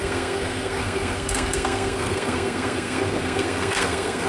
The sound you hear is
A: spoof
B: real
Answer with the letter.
A